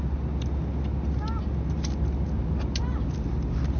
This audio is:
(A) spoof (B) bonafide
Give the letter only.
B